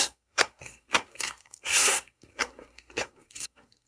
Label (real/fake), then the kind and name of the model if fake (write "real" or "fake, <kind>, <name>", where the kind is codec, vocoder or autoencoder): fake, codec, SNAC